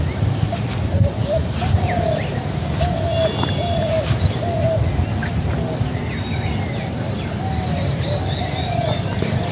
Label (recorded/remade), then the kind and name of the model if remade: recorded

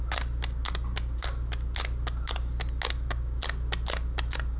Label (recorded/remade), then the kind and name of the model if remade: recorded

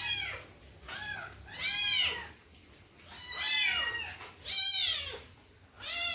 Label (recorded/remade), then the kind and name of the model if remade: recorded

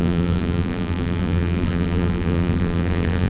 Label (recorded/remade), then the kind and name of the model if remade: remade, vocoder, BigVGAN v2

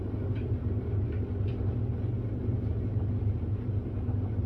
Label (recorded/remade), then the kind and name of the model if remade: recorded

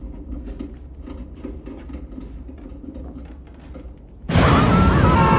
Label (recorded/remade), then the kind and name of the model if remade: recorded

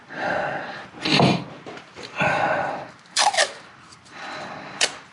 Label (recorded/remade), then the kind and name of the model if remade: remade, vocoder, BigVGAN v2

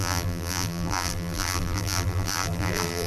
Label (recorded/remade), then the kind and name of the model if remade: remade, vocoder, BigVGAN v2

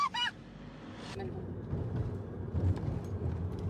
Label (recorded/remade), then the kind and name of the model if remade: recorded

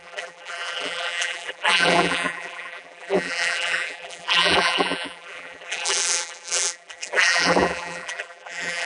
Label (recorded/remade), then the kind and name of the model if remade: remade, vocoder, BigVGAN v2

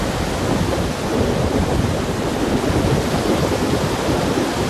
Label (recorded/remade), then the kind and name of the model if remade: recorded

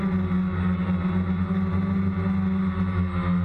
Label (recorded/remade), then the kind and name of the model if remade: recorded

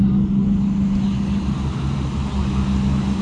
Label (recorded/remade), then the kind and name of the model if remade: recorded